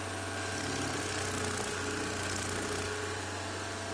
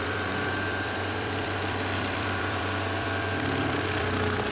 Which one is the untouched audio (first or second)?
first